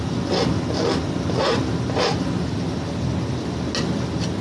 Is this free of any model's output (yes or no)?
yes